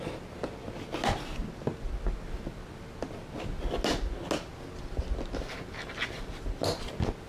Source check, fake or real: real